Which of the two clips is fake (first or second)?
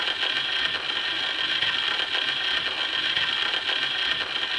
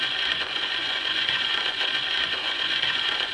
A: second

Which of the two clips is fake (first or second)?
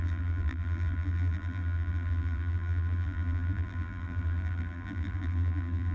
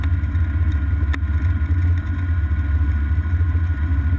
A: first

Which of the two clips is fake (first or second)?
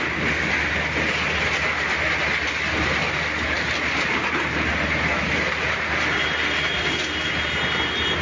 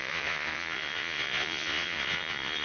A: second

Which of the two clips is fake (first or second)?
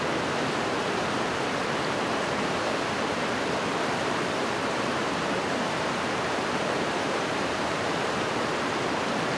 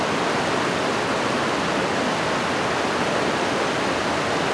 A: first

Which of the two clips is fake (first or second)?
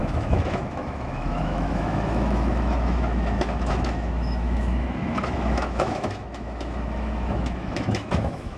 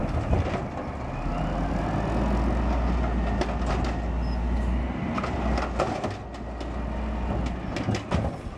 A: first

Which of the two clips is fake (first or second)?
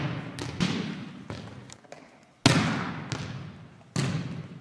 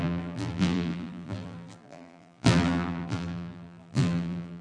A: second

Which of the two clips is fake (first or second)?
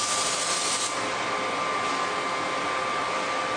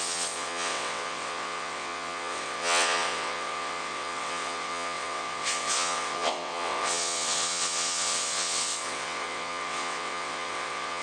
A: second